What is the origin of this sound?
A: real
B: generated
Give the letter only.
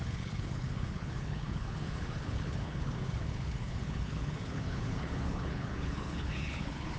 B